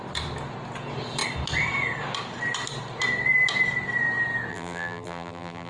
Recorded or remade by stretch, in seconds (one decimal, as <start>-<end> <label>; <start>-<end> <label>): 0.0-4.5 recorded; 4.5-5.7 remade